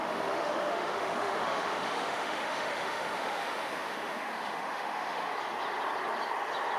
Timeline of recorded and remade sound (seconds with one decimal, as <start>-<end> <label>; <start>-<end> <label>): 0.0-5.3 remade; 5.3-6.8 recorded